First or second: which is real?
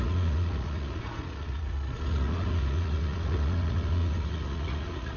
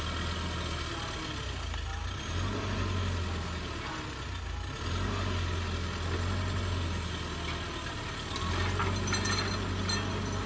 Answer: second